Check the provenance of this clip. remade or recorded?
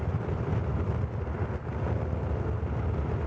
recorded